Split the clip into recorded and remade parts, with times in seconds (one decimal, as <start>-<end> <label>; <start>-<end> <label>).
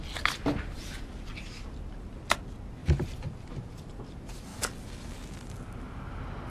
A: 0.0-2.8 recorded; 2.8-4.0 remade; 4.0-6.5 recorded